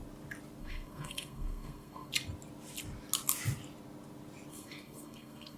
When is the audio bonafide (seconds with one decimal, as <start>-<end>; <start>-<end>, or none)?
0.0-0.6; 2.1-4.5